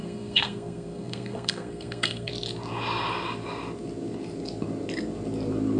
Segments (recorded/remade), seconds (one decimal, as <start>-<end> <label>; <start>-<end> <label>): 0.0-2.3 remade; 2.3-5.8 recorded